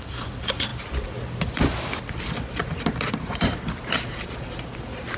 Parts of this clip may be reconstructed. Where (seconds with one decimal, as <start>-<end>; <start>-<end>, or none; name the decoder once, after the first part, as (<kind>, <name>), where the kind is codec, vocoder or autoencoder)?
0.0-0.7 (vocoder, BigVGAN v2); 3.8-5.2